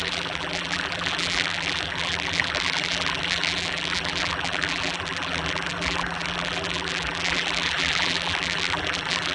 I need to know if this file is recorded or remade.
remade